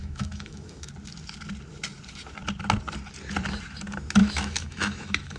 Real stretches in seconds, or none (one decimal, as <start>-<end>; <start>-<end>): 0.9-4.2